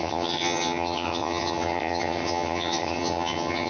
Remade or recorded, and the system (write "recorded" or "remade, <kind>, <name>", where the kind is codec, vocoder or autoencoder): remade, vocoder, HiFi-GAN